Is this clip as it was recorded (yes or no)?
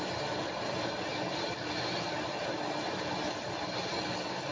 yes